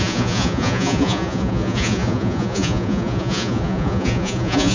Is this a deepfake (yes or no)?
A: yes